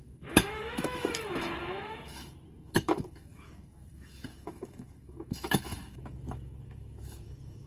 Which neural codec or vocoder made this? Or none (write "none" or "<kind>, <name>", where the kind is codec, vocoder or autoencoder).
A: autoencoder, DAC-VAE